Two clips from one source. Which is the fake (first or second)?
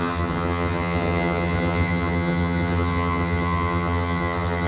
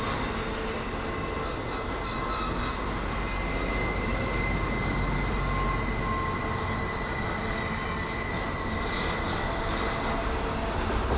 first